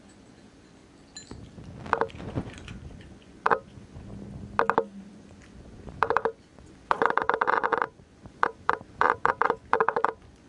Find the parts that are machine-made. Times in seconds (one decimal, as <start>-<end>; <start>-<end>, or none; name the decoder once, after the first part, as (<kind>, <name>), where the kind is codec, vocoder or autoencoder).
0.0-0.8 (vocoder, Vocos); 2.2-4.1; 5.1-10.5